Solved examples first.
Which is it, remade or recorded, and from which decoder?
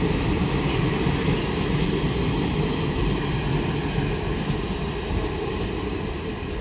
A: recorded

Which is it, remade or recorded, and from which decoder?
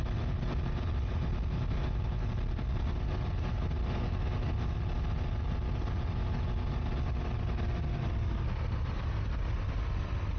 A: recorded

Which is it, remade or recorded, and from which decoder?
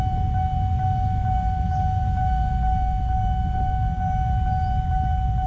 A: recorded